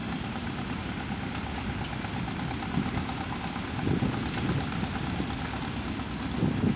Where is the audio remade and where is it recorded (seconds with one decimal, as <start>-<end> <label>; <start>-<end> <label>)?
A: 0.0-0.8 remade; 0.8-6.8 recorded

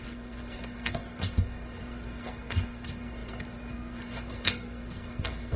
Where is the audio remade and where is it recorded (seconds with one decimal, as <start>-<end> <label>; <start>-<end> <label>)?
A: 0.0-5.6 remade

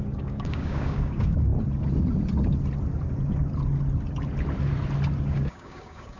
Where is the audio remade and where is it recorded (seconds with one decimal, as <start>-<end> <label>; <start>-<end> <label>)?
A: 0.0-1.5 remade; 1.5-5.2 recorded; 5.2-6.2 remade

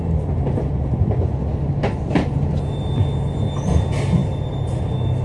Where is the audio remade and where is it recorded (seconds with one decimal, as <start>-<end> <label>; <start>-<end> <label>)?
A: 0.0-5.2 recorded

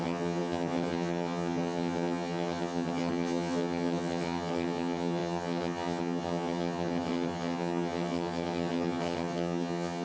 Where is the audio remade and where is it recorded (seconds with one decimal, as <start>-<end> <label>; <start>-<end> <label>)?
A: 0.0-10.0 remade

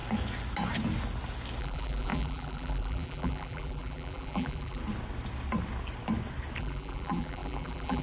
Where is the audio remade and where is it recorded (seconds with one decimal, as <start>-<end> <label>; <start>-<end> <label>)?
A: 0.0-1.6 recorded; 1.6-4.8 remade; 4.8-6.6 recorded; 6.6-8.0 remade

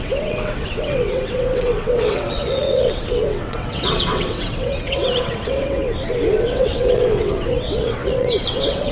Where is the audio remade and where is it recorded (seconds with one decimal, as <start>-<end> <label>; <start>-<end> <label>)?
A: 0.0-5.8 remade; 5.8-6.4 recorded; 6.4-8.9 remade